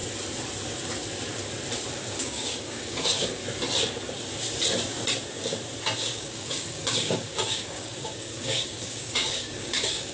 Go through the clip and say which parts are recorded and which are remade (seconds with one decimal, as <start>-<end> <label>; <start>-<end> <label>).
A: 0.0-1.9 recorded; 1.9-3.4 remade; 3.4-6.0 recorded; 6.0-10.1 remade